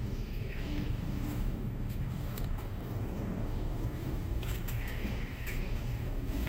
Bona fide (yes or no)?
no